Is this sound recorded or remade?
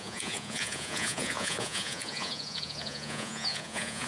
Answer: remade